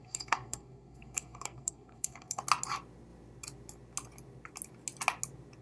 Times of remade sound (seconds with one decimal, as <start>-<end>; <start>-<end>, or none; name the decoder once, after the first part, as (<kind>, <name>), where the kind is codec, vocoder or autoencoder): 0.0-2.4 (codec, SNAC)